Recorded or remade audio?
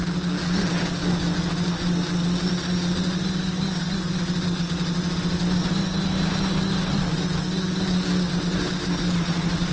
recorded